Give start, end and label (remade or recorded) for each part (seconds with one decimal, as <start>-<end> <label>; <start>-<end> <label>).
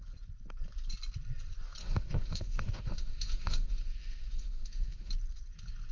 0.0-1.8 recorded; 1.8-5.1 remade; 5.1-5.9 recorded